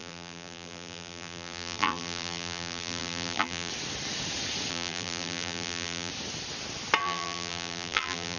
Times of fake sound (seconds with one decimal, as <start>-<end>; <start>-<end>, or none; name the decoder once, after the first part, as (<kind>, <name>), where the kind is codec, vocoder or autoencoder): 0.0-3.7 (vocoder, BigVGAN v2); 4.7-6.1; 7.0-8.4

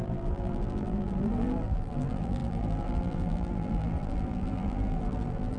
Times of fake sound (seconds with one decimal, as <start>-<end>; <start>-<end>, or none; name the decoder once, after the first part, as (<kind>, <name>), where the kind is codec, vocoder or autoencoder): 0.0-5.6 (vocoder, BigVGAN v2)

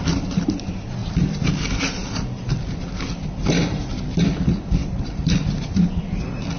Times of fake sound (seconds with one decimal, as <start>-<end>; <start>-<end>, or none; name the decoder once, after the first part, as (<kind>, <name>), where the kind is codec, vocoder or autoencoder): 1.0-1.5 (vocoder, BigVGAN v2); 4.8-6.0

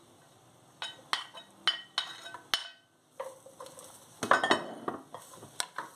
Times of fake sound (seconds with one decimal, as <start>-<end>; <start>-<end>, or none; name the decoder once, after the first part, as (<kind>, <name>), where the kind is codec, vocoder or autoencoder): none

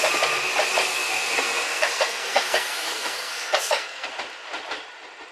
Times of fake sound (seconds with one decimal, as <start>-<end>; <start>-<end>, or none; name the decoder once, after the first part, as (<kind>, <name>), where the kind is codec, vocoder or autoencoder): 0.9-4.1 (codec, SNAC)